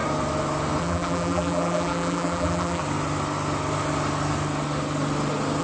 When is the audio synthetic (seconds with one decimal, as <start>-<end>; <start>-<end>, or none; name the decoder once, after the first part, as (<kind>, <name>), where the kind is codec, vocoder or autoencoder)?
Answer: 0.8-2.8 (vocoder, BigVGAN v2)